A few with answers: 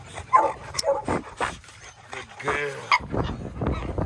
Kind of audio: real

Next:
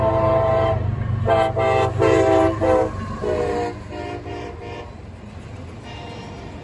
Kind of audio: fake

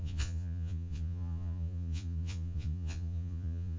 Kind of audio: fake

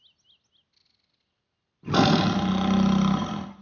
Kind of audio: real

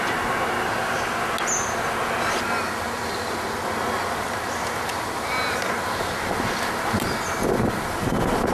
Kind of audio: real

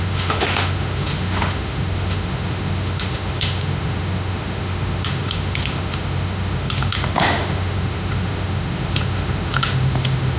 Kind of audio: fake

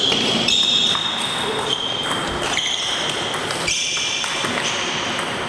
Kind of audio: real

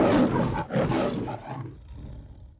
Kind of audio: real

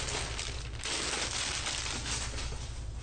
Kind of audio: real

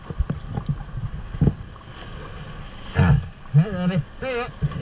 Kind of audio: real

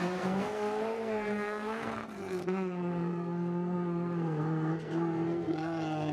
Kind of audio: fake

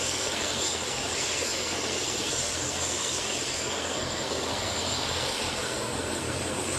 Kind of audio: fake